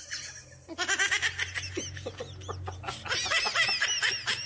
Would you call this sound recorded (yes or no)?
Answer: yes